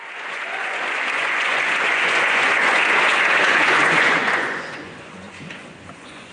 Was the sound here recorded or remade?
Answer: remade